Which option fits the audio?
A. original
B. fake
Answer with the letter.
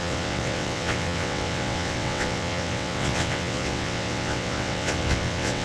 B